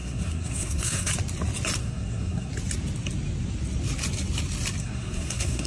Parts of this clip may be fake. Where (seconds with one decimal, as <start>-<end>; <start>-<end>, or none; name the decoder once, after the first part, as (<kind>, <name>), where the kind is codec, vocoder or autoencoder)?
0.0-1.1 (codec, SNAC); 1.8-2.5; 4.8-5.7